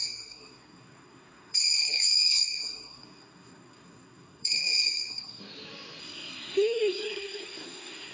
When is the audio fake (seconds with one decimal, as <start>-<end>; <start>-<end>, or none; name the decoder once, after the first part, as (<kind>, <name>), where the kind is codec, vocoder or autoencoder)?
0.0-5.4 (codec, SNAC); 6.0-8.1